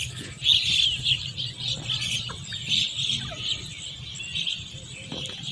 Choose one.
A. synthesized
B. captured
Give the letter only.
B